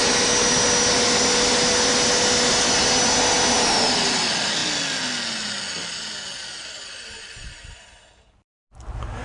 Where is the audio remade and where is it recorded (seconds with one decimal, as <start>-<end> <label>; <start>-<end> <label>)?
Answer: 0.0-9.2 recorded